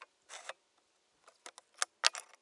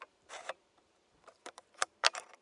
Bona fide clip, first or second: first